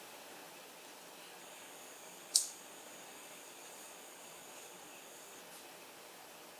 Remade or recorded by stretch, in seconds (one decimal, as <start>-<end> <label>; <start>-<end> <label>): 0.0-1.4 recorded; 1.4-5.4 remade; 5.4-6.6 recorded